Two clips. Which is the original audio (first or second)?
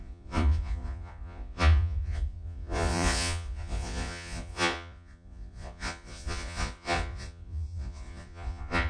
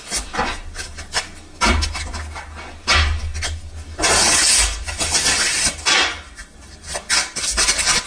second